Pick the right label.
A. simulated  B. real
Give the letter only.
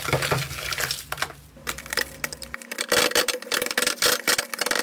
B